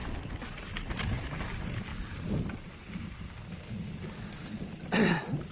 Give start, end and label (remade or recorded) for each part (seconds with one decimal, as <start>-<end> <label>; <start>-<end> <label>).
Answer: 0.0-5.5 recorded